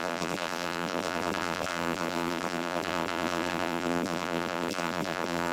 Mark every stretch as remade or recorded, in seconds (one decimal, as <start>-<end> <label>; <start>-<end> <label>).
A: 0.0-5.5 remade